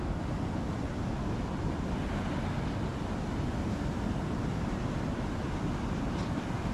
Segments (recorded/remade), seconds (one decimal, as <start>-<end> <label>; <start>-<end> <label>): 0.0-6.7 recorded